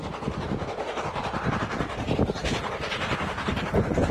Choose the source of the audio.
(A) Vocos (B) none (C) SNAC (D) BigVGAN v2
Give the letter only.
B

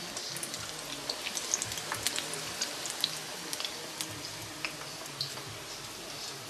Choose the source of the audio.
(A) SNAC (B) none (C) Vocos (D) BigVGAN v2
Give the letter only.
B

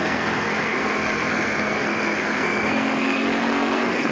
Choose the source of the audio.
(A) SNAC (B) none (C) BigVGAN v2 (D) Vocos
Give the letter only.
A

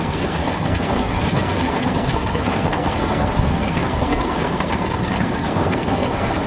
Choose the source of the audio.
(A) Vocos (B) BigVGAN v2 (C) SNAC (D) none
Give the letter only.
C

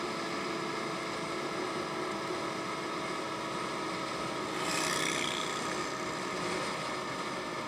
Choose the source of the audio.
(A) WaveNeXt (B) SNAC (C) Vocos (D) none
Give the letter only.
D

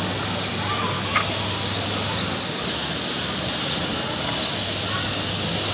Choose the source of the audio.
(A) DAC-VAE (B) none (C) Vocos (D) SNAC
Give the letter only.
B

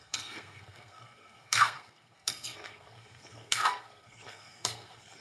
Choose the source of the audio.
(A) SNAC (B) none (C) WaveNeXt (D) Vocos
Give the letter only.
A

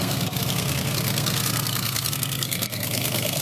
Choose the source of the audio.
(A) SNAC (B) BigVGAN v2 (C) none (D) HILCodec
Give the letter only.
A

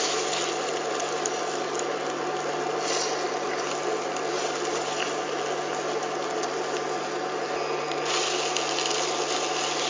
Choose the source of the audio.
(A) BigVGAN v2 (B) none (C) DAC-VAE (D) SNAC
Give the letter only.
B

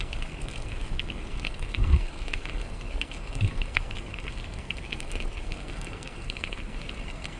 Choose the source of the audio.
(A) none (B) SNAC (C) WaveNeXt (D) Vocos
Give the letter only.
B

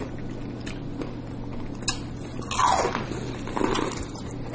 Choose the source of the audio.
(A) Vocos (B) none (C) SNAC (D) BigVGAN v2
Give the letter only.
B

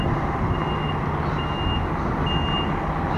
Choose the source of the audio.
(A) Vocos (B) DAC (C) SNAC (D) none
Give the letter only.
D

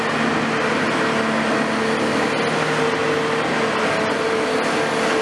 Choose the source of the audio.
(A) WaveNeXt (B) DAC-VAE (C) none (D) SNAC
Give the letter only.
C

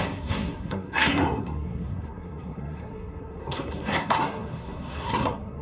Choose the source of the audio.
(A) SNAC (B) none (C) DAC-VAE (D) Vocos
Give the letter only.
A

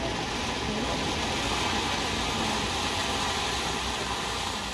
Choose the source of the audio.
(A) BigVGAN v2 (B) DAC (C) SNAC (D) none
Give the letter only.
D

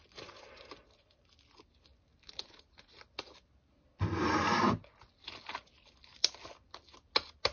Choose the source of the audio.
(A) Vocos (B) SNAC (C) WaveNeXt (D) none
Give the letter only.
D